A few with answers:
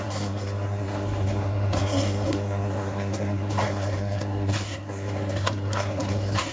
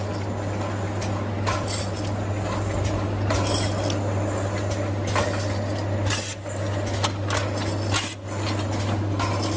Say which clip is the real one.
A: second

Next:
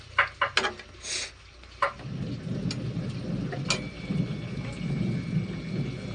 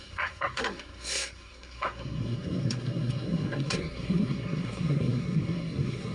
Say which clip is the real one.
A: first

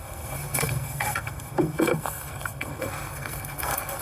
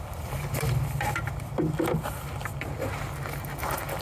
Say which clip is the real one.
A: second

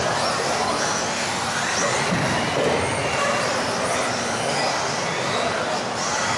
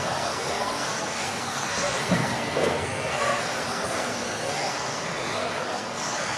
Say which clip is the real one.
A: first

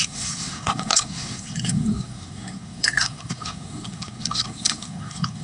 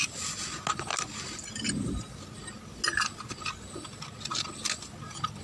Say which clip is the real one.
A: second